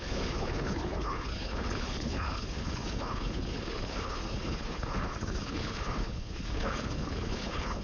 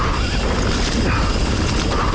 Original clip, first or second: second